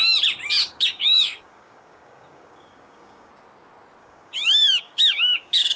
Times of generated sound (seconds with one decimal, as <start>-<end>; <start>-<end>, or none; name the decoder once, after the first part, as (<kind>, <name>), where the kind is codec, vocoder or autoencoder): 0.6-3.3 (codec, DAC); 4.0-5.8